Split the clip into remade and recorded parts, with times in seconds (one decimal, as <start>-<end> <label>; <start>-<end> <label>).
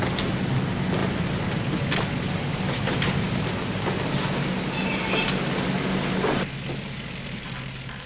0.0-8.1 recorded